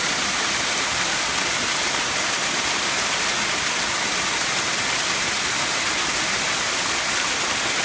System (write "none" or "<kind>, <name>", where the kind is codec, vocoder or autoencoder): none